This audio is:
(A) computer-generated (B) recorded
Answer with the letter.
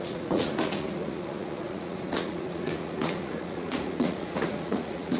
A